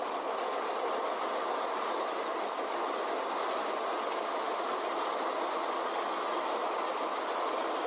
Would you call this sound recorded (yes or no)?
yes